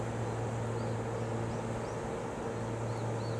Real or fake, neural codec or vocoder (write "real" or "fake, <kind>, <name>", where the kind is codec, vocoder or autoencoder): real